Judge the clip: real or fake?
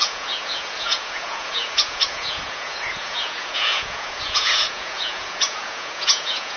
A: fake